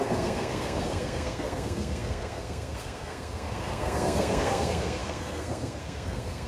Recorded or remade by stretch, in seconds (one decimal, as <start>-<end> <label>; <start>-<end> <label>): 0.0-6.5 remade